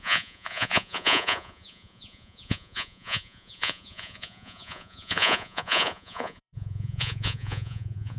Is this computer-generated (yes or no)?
yes